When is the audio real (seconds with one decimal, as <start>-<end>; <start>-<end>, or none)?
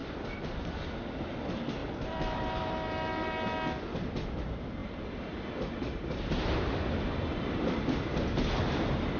0.0-1.8; 2.6-9.2